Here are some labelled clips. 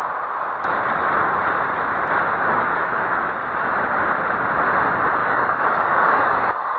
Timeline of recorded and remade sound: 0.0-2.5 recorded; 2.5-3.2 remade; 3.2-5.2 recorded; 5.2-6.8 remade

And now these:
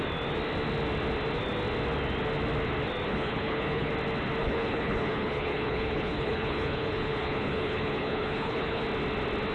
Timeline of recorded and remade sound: 0.0-3.1 recorded; 3.1-3.9 remade; 3.9-4.4 recorded; 4.4-8.8 remade; 8.8-9.5 recorded

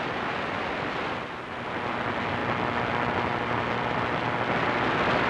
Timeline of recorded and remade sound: 0.0-5.3 recorded

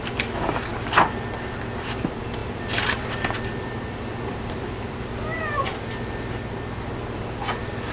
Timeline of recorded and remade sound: 0.0-2.4 recorded; 2.4-5.4 remade; 5.4-7.9 recorded

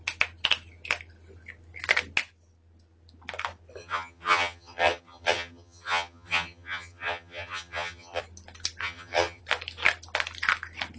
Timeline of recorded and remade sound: 0.0-3.8 recorded; 3.8-8.2 remade; 8.2-8.8 recorded; 8.8-9.4 remade; 9.4-11.0 recorded

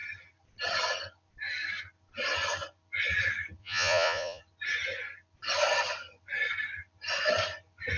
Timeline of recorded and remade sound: 0.0-3.6 recorded; 3.6-4.4 remade; 4.4-8.0 recorded

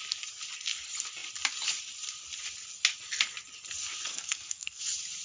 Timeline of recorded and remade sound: 0.0-4.1 recorded; 4.1-4.8 remade; 4.8-5.2 recorded